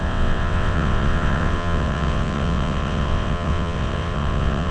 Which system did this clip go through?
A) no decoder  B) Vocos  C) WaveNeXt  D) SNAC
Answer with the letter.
C